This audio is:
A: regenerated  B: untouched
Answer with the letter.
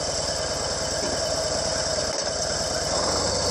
B